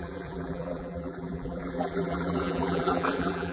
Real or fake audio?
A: fake